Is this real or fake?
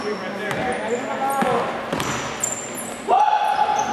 real